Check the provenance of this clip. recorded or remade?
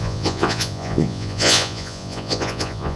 remade